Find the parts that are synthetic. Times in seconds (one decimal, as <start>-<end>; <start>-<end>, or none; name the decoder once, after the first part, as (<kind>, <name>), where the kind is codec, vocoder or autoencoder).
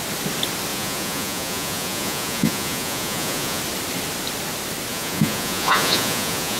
0.7-3.6 (vocoder, Vocos); 4.9-6.6